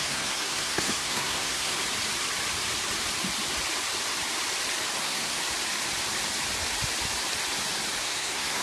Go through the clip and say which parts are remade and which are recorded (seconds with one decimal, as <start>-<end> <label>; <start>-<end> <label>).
0.0-1.7 remade; 1.7-5.0 recorded; 5.0-5.4 remade; 5.4-8.0 recorded; 8.0-8.6 remade